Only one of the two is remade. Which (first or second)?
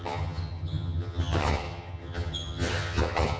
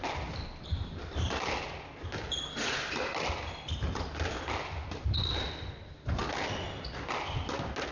first